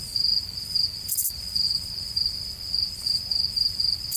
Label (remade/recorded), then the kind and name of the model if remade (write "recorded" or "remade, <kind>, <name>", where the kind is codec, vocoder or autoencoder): remade, vocoder, BigVGAN v2